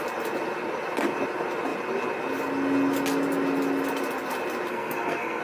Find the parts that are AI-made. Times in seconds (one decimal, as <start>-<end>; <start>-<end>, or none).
4.7-5.4